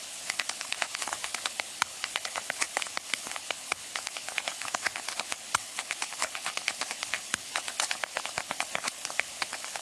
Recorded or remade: remade